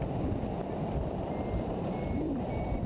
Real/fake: real